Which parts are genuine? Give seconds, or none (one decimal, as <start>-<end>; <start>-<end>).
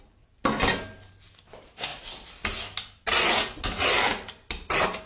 0.0-5.1